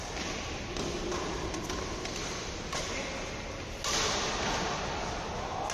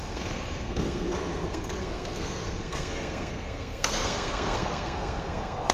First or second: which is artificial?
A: second